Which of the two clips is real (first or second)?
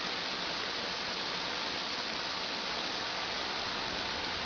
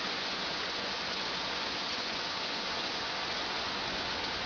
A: first